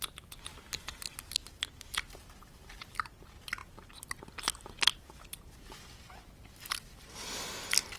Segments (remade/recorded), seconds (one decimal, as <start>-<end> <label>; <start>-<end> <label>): 0.0-8.0 recorded